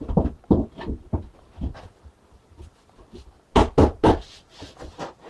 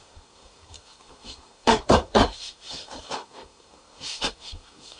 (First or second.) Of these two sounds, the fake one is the second